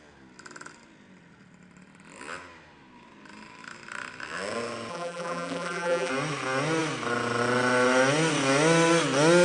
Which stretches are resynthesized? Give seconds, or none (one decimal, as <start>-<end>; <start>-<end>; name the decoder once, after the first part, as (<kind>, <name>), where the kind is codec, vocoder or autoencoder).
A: 4.9-6.1 (vocoder, BigVGAN v2)